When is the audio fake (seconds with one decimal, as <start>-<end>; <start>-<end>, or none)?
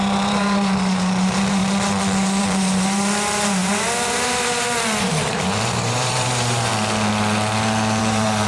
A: 0.0-1.6; 2.4-6.7; 8.0-8.5